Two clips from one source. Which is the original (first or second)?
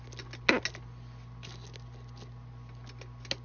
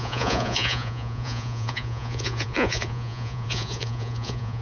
first